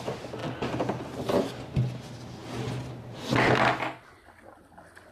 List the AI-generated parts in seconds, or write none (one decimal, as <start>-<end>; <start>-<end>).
none